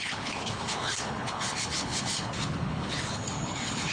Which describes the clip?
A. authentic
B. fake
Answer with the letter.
B